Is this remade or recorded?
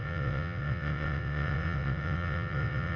remade